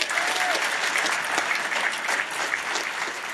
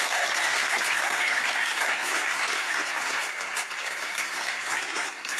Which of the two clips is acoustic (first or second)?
first